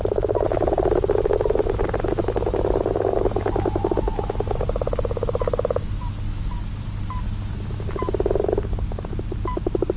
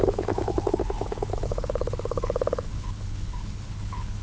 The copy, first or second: second